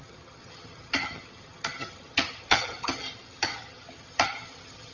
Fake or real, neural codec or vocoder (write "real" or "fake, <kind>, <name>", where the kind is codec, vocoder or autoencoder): fake, vocoder, HiFi-GAN